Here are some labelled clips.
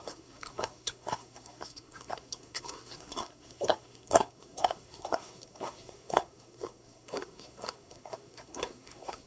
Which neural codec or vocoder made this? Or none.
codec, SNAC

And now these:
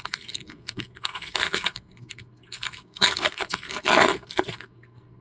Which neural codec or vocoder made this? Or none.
codec, SNAC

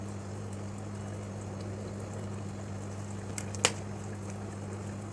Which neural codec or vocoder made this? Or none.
none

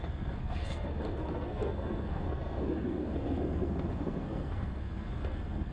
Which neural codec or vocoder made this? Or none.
codec, SNAC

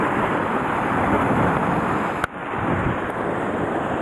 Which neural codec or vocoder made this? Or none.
none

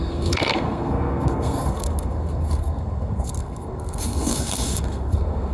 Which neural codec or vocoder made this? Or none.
codec, SNAC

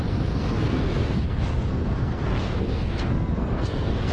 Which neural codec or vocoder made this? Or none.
codec, SNAC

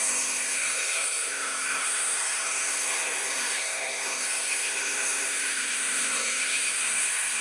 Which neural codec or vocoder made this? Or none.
codec, SNAC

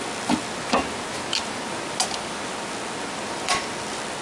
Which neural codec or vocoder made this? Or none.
none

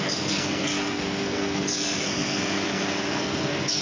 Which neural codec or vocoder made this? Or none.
codec, SNAC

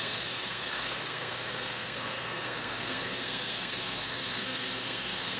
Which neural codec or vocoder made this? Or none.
codec, SNAC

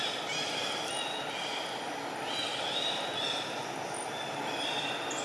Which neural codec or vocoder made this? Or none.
none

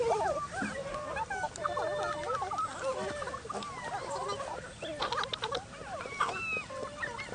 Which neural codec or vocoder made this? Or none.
none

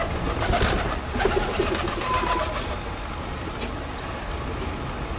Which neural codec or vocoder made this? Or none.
none